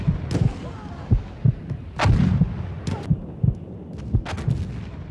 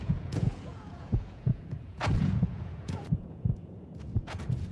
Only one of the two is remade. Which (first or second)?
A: second